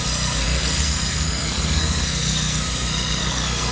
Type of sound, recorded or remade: remade